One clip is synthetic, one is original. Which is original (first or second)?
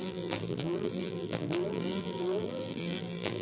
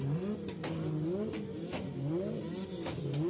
second